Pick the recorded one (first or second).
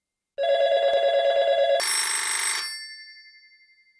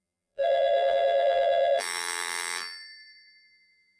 first